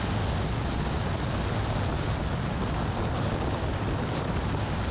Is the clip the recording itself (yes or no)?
yes